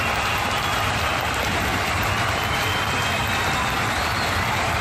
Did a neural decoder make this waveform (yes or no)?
yes